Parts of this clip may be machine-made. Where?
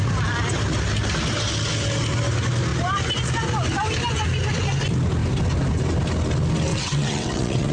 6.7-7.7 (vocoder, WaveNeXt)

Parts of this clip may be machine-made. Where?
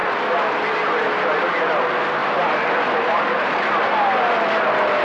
0.0-1.8 (vocoder, BigVGAN v2)